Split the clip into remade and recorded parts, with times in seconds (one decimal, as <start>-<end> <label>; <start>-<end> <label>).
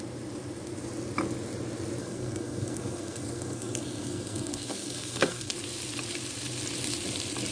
0.0-2.0 recorded; 2.0-5.5 remade; 5.5-7.5 recorded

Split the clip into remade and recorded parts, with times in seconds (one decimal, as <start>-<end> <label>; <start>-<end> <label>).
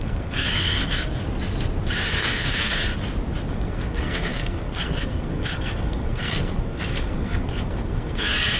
0.0-1.2 remade; 1.2-2.2 recorded; 2.2-2.9 remade; 2.9-3.5 recorded; 3.5-8.6 remade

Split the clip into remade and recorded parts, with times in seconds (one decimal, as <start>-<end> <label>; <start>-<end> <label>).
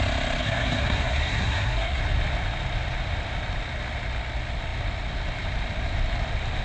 0.0-0.4 recorded; 0.4-2.0 remade; 2.0-6.6 recorded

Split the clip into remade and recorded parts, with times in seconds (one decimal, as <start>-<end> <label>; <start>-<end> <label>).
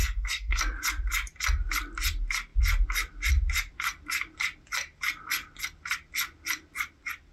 0.0-0.6 remade; 0.6-7.3 recorded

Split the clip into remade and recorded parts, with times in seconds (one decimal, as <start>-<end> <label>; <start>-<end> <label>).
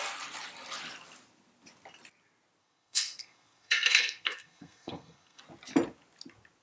0.0-2.6 recorded; 2.6-5.4 remade; 5.4-6.6 recorded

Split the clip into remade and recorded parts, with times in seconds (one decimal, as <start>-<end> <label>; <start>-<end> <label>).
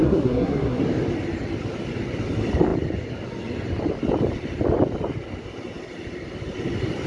0.0-0.8 remade; 0.8-7.1 recorded